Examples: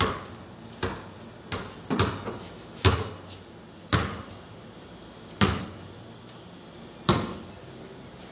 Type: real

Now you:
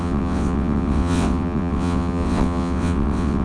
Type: fake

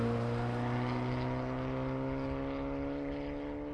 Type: real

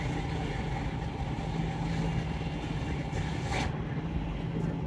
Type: real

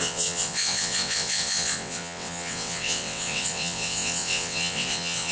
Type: fake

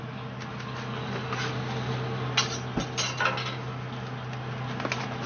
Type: real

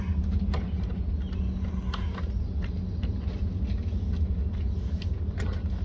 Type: real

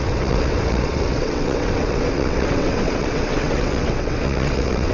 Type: fake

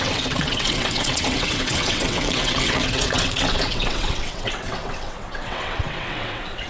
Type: fake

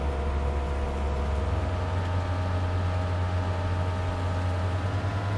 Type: real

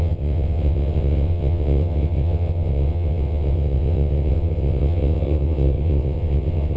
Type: fake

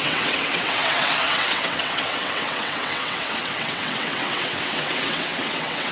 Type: fake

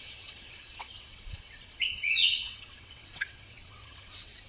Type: fake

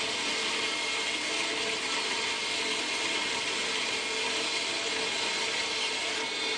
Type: real